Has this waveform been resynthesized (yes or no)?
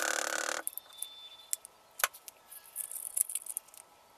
no